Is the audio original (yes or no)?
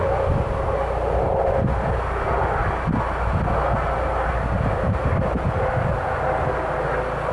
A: yes